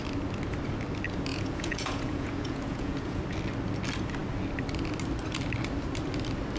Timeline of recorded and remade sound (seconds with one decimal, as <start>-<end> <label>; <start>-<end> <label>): 0.0-1.3 recorded; 1.3-3.2 remade; 3.2-6.6 recorded